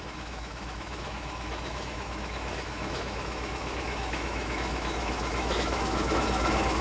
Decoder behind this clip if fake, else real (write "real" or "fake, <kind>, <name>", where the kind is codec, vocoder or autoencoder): fake, autoencoder, DAC-VAE